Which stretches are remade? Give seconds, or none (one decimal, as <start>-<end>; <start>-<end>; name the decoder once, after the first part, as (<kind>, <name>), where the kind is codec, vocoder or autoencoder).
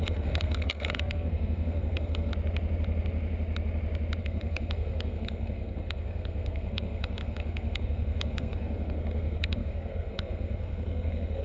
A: 0.0-2.3 (codec, SNAC); 4.2-11.4